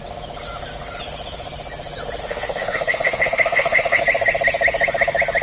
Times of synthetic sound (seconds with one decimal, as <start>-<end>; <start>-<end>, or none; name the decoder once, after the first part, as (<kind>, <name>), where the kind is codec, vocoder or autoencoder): 2.2-4.0 (autoencoder, DAC-VAE)